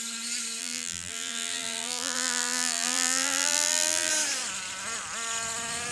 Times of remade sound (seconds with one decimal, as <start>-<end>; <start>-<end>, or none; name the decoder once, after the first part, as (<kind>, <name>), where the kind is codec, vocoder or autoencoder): 0.6-4.1 (vocoder, BigVGAN v2)